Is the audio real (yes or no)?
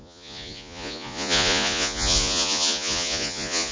no